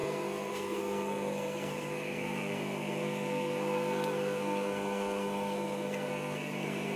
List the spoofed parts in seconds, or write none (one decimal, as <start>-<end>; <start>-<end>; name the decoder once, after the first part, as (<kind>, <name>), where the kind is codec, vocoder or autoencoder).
0.0-7.0 (codec, SNAC)